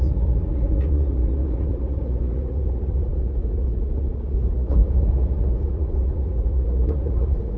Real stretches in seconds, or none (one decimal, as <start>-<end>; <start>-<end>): none